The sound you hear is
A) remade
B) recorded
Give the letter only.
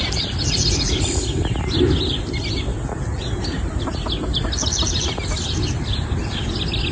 B